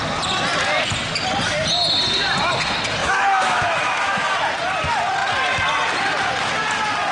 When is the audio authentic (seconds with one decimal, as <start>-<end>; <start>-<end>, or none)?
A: 0.0-3.0; 4.4-7.1